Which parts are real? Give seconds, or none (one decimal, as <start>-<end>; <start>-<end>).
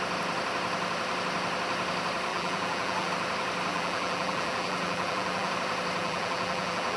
0.0-2.3; 3.1-3.7; 5.5-6.0